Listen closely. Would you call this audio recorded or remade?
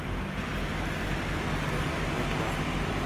recorded